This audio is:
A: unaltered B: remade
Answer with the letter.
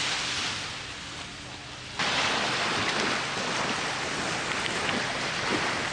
A